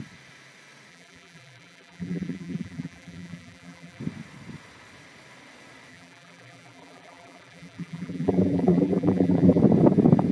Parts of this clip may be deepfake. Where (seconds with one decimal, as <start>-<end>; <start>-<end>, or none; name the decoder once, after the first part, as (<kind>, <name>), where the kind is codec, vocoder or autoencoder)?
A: 0.9-4.0 (vocoder, BigVGAN v2); 5.9-9.6